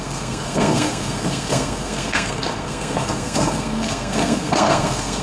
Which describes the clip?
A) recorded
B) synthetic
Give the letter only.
B